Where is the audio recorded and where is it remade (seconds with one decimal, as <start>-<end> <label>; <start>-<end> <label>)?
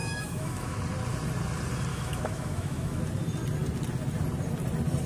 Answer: 0.0-0.8 remade; 0.8-1.9 recorded; 1.9-3.0 remade; 3.0-5.1 recorded